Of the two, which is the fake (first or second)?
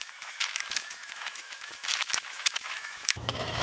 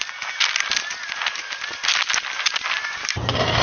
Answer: first